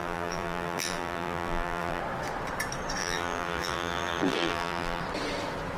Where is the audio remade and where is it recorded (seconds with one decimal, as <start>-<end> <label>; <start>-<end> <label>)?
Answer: 0.0-2.0 remade; 2.0-3.0 recorded; 3.0-5.0 remade; 5.0-5.8 recorded